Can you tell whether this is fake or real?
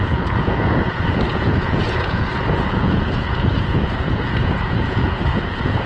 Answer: fake